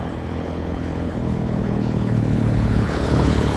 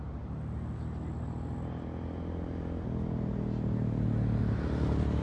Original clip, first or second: second